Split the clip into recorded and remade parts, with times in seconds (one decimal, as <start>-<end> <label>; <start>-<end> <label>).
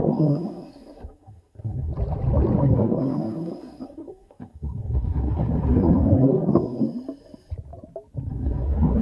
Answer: 0.0-1.9 remade; 1.9-2.6 recorded; 2.6-6.8 remade; 6.8-8.3 recorded; 8.3-9.0 remade